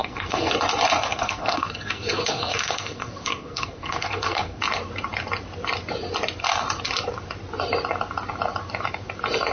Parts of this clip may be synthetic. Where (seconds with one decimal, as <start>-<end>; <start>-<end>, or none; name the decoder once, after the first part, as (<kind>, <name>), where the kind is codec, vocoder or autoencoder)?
0.0-0.5 (codec, SNAC); 1.1-4.6